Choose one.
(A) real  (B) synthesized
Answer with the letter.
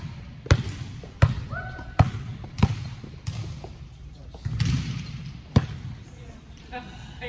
A